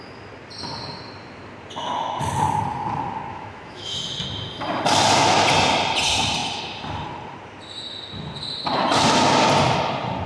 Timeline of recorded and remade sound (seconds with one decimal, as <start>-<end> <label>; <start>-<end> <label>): 0.0-3.3 recorded; 3.3-4.0 remade; 4.0-10.3 recorded